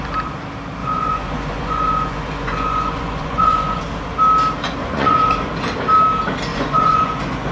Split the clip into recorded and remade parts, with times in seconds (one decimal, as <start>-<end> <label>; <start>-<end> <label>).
0.0-0.8 recorded; 0.8-3.8 remade; 3.8-4.8 recorded; 4.8-5.5 remade; 5.5-6.5 recorded; 6.5-7.5 remade